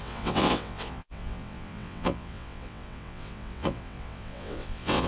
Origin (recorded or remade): remade